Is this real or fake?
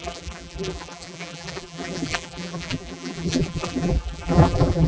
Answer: fake